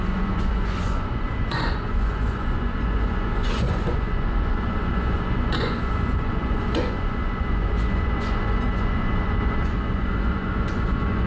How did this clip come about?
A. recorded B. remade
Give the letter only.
B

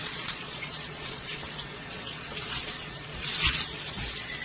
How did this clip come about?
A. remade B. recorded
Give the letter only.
A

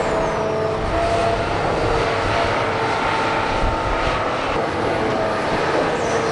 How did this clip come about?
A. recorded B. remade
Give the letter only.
A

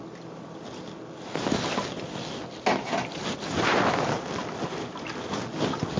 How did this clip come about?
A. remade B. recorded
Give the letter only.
B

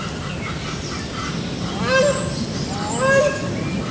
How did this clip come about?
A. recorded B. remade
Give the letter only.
A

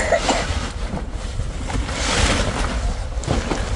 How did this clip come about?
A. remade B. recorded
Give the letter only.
B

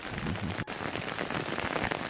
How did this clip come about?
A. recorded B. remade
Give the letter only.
A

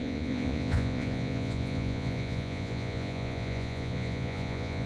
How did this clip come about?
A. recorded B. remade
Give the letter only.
B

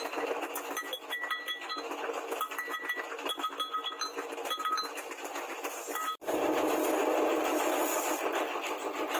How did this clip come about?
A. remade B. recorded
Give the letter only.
B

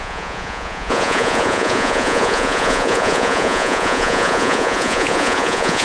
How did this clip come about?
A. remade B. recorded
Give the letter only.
A